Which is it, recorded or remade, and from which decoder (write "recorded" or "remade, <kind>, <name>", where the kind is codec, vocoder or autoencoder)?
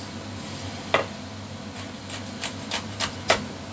recorded